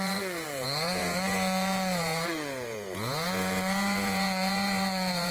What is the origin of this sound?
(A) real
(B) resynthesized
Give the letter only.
B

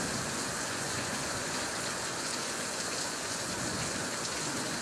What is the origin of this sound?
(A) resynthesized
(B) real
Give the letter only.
A